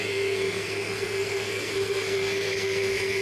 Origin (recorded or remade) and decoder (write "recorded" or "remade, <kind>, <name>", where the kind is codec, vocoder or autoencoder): remade, codec, SNAC